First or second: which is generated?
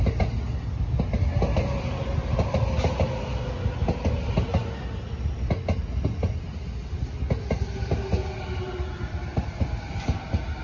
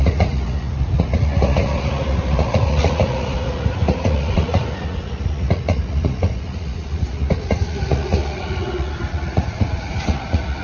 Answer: second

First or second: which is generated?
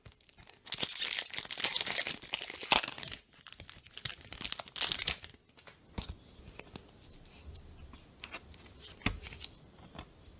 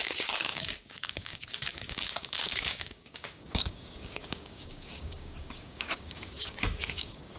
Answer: second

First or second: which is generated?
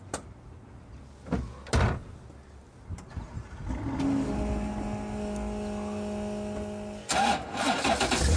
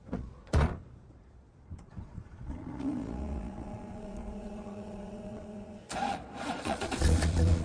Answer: second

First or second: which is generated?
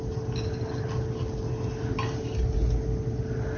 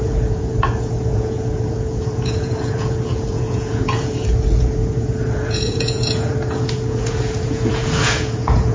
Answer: second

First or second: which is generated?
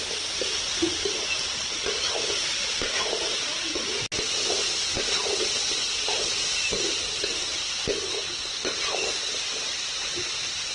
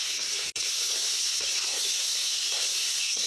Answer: second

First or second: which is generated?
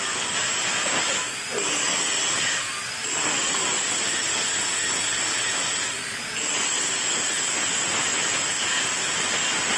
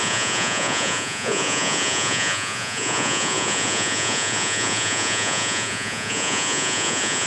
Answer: second